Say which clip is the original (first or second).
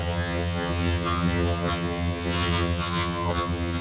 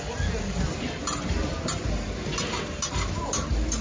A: second